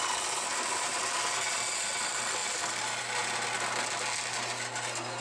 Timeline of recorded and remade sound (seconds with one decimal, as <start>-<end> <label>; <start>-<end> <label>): 0.0-0.5 recorded; 0.5-1.2 remade; 1.2-2.4 recorded; 2.4-3.0 remade; 3.0-5.2 recorded